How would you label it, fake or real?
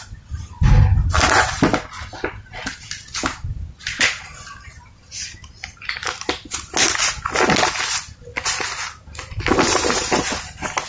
real